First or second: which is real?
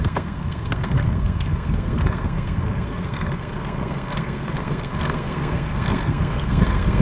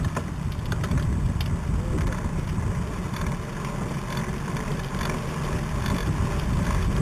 second